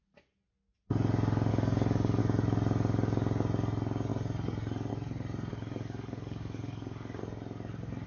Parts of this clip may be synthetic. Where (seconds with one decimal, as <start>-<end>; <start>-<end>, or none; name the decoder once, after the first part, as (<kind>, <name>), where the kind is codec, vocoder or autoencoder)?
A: 1.5-2.2 (codec, DAC); 5.5-7.2